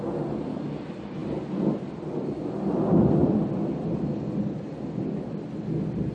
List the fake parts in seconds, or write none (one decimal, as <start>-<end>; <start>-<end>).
none